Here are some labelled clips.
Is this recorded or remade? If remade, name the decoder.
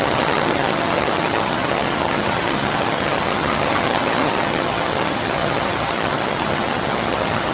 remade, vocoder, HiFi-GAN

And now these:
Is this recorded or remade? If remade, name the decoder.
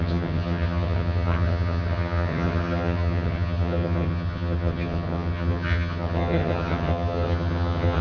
remade, vocoder, HiFi-GAN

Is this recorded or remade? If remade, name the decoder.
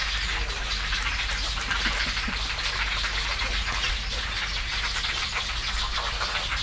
recorded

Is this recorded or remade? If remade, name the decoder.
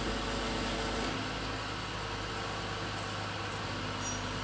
recorded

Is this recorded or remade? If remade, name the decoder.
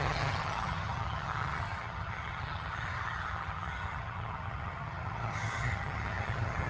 remade, vocoder, HiFi-GAN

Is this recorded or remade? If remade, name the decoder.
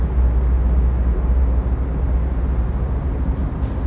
recorded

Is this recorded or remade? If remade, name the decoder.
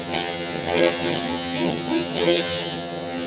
remade, vocoder, HiFi-GAN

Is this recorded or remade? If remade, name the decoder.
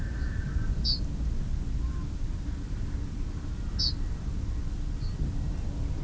recorded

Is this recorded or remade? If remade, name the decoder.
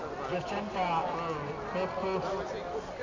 recorded